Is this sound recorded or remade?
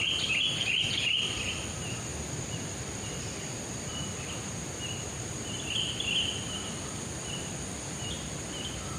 recorded